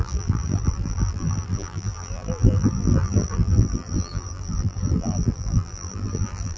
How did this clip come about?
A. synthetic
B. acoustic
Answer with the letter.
A